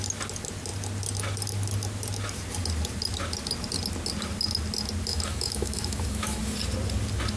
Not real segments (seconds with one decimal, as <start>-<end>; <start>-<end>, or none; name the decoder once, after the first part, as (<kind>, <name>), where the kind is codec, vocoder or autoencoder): 5.1-6.4 (autoencoder, DAC-VAE)